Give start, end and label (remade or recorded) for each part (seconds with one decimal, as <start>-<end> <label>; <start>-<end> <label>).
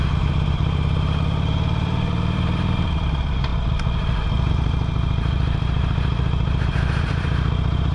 0.0-3.5 remade; 3.5-4.5 recorded; 4.5-7.9 remade